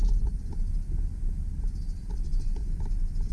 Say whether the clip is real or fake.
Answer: real